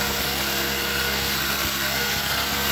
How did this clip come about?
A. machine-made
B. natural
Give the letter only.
A